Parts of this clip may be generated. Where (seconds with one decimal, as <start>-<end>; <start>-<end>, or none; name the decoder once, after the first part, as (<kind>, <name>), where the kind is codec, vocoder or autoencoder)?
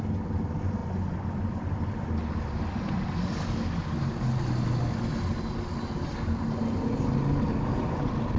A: none